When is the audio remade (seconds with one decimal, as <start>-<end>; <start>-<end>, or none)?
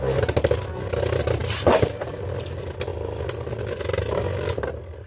2.9-3.5